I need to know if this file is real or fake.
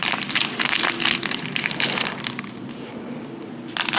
fake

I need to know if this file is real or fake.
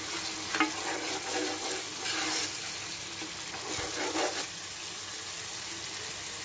real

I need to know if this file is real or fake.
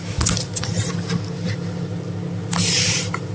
real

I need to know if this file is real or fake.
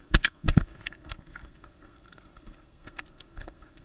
fake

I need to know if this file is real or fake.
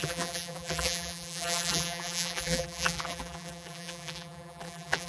fake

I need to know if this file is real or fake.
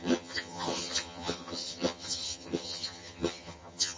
fake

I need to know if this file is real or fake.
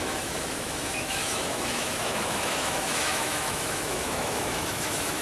fake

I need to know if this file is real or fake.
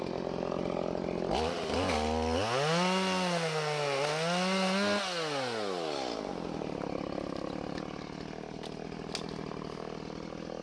real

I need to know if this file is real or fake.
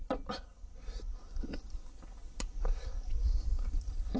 real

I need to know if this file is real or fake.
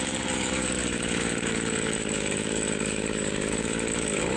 fake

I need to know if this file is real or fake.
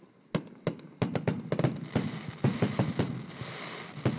real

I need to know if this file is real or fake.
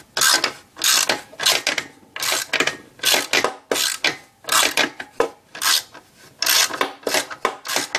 real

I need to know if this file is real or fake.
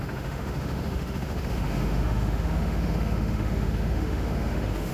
fake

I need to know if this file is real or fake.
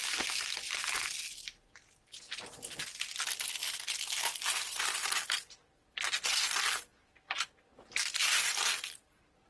real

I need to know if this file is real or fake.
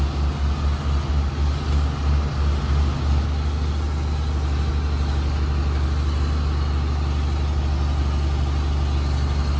real